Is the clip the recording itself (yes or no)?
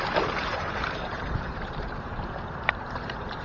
no